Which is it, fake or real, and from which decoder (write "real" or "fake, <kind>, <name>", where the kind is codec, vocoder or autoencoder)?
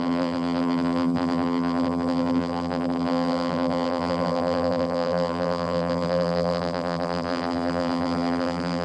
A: fake, vocoder, BigVGAN v2